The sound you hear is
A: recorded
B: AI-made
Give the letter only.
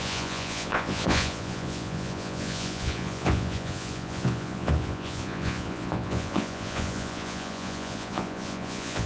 B